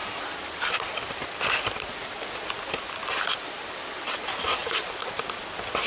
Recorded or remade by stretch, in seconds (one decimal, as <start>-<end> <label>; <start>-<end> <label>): 0.0-3.5 remade; 3.5-4.6 recorded; 4.6-5.4 remade; 5.4-5.9 recorded